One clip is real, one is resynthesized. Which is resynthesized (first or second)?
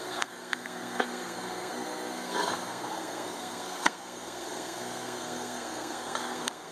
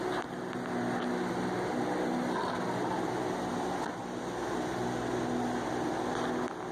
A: first